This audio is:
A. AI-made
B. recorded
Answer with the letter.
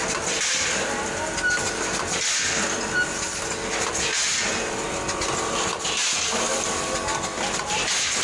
B